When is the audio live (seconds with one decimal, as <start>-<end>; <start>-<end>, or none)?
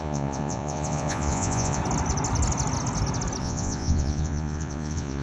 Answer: 1.8-3.4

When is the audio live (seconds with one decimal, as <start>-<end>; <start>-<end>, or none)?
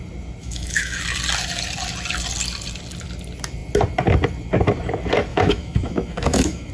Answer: 0.0-0.4; 1.0-5.3